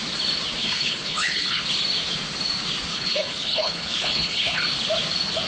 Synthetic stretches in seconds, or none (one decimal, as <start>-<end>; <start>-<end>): 0.6-1.6; 2.9-4.6